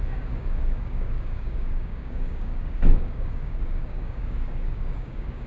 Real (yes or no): no